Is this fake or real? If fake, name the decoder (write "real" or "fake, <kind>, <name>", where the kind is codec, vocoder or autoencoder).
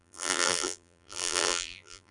fake, vocoder, BigVGAN v2